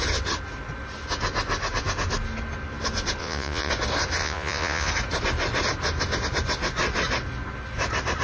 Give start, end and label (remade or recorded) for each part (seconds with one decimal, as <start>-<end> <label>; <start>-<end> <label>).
0.0-3.2 recorded; 3.2-3.7 remade; 3.7-4.2 recorded; 4.2-4.9 remade; 4.9-8.2 recorded